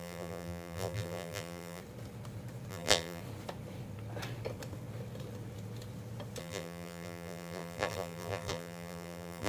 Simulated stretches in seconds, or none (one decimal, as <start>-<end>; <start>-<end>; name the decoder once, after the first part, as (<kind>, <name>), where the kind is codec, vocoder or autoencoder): 0.0-1.8 (vocoder, BigVGAN v2); 2.7-3.2; 6.4-9.5